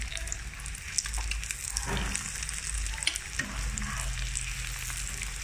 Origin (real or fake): real